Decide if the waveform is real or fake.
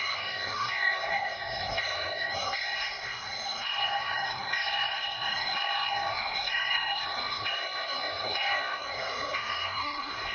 fake